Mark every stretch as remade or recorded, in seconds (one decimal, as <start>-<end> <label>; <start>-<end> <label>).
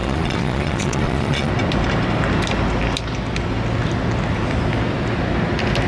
0.0-1.5 remade; 1.5-5.9 recorded